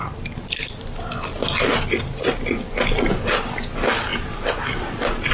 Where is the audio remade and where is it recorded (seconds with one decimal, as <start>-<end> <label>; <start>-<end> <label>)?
0.0-5.3 recorded